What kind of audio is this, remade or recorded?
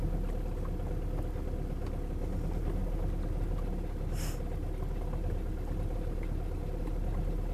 recorded